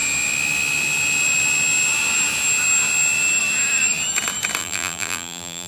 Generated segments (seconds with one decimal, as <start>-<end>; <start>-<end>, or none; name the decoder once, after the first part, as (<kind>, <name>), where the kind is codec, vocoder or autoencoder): 4.6-5.7 (vocoder, BigVGAN v2)